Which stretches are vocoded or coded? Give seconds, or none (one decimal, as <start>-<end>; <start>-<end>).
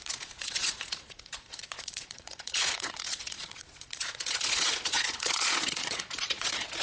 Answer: 0.0-6.8